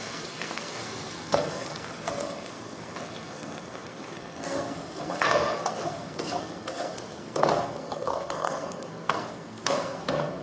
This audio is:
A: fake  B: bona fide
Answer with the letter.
A